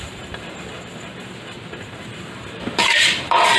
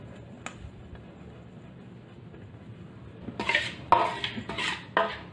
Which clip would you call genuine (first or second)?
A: second